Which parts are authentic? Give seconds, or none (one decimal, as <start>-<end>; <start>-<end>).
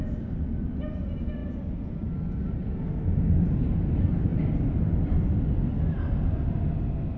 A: 0.0-4.3; 5.4-7.2